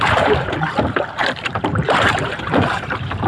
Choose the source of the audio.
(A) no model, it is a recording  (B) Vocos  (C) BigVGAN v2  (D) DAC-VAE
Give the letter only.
C